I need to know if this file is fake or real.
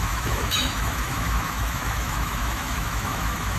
fake